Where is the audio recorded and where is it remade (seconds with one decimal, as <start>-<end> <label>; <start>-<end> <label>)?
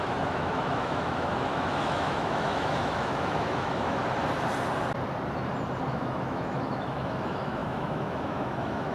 0.0-4.0 remade; 4.0-5.9 recorded; 5.9-8.9 remade